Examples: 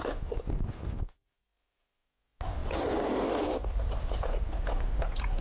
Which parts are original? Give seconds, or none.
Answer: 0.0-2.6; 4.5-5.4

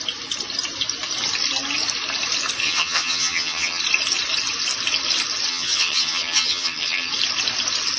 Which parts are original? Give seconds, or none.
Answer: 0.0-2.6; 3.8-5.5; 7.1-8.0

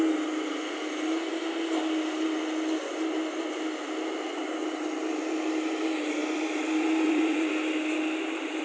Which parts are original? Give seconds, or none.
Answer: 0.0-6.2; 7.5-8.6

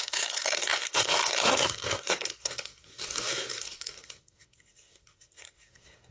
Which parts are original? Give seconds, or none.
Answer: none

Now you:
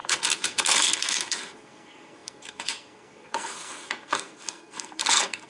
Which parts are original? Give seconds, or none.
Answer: none

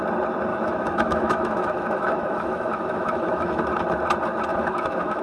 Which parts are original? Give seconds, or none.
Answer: 0.0-0.5; 3.6-4.5